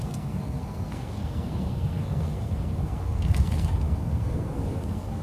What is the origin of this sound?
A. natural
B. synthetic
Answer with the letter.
B